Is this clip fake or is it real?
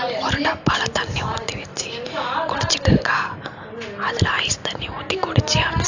real